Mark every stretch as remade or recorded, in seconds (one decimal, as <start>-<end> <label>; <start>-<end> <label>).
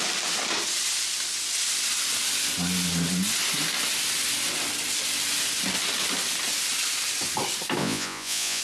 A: 0.0-7.8 recorded; 7.8-8.6 remade